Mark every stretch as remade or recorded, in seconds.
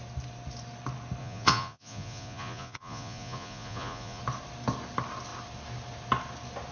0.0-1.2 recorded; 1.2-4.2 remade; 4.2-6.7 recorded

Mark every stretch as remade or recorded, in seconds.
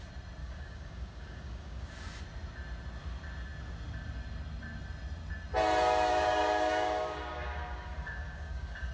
0.0-0.4 recorded; 0.4-1.9 remade; 1.9-6.1 recorded; 6.1-8.9 remade